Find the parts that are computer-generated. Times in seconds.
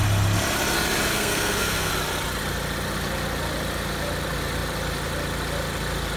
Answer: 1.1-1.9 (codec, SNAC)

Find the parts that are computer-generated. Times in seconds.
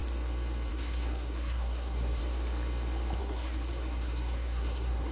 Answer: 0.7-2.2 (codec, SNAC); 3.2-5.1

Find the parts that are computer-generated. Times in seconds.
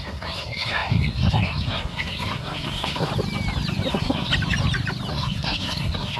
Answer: 0.0-3.1 (codec, SNAC); 3.9-4.3; 5.1-6.2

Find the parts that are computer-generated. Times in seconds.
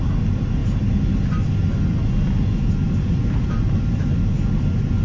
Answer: none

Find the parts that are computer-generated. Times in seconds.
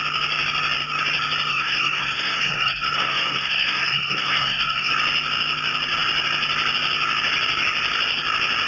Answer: 1.5-4.9 (codec, SNAC)